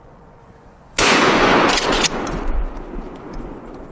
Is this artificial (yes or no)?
yes